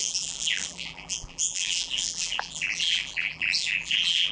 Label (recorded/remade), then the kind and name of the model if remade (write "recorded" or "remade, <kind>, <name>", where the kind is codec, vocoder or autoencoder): remade, vocoder, BigVGAN v2